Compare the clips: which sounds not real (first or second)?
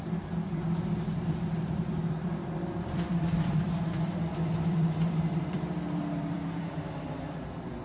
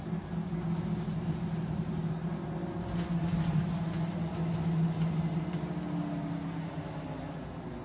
first